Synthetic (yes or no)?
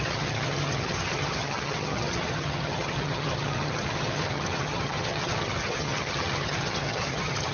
yes